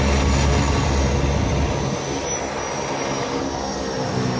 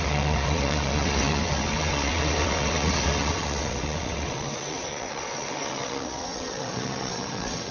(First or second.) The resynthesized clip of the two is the second